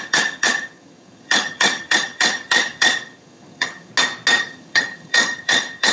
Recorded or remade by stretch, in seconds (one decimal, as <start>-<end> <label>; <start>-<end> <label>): 0.0-3.9 remade; 3.9-4.4 recorded; 4.4-5.9 remade